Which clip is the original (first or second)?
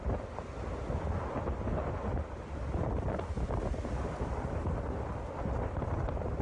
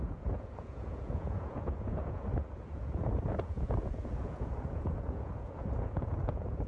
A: first